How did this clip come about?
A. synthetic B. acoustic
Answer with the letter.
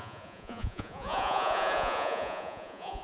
A